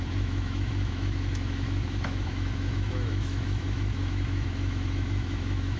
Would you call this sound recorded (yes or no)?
no